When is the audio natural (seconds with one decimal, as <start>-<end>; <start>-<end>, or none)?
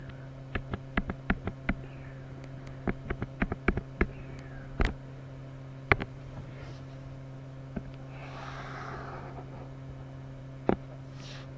0.0-6.0; 6.7-11.6